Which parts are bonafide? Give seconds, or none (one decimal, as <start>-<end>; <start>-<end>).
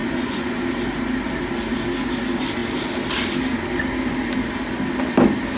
0.6-5.6